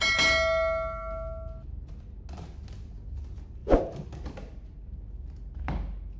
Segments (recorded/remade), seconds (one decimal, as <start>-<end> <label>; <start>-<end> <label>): 0.0-6.2 recorded